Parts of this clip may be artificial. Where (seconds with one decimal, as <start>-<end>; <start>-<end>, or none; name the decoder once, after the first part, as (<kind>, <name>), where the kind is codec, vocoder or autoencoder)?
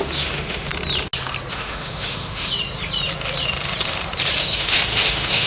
0.0-0.7 (autoencoder, DAC-VAE); 1.5-2.5; 4.4-5.5